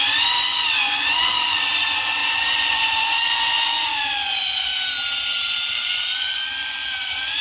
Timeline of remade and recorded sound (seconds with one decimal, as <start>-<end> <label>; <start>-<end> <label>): 0.0-4.7 remade; 4.7-5.7 recorded; 5.7-7.4 remade